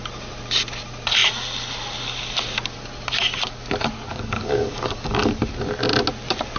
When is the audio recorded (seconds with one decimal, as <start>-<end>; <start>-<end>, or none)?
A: 0.0-4.1; 5.3-6.6